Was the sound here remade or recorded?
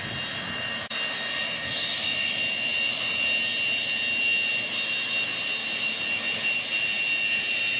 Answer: recorded